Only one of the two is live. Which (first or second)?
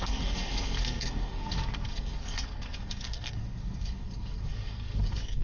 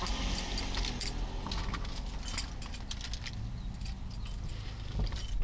second